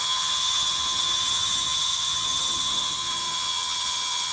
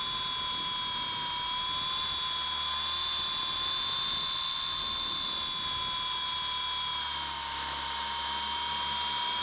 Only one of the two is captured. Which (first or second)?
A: second